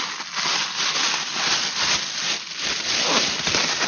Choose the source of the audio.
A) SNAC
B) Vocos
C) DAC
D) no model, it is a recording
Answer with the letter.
D